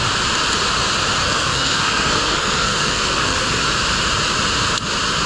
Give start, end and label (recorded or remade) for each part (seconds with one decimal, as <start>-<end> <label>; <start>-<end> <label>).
0.0-1.2 recorded; 1.2-3.6 remade; 3.6-5.3 recorded